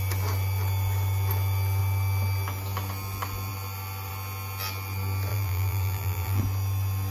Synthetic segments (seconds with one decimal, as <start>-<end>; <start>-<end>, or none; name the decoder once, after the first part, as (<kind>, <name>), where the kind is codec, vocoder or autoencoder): 5.3-6.4 (vocoder, BigVGAN v2)